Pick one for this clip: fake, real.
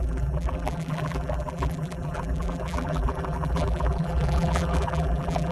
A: fake